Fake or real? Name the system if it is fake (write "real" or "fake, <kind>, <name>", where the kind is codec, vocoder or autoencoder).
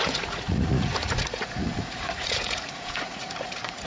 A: fake, vocoder, Vocos